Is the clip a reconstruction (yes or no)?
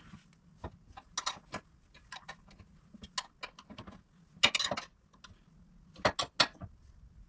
no